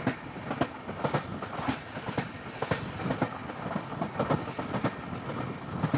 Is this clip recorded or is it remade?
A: recorded